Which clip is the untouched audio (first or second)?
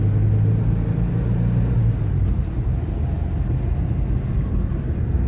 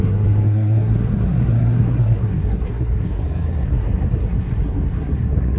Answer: first